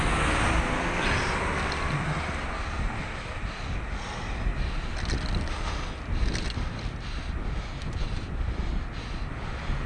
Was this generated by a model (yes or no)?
no